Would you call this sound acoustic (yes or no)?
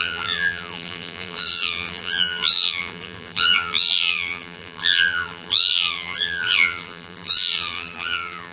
no